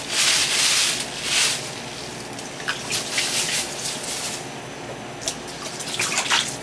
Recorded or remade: recorded